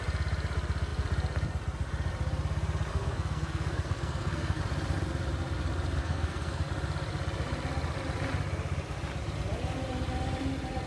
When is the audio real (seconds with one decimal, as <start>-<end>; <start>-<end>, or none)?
0.0-2.9; 4.6-6.0; 6.7-10.9